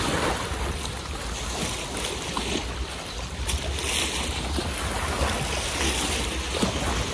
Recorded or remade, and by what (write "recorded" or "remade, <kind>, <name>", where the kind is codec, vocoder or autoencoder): recorded